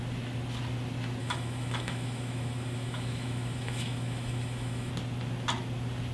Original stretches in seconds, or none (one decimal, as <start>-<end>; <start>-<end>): 0.0-1.2; 4.9-6.1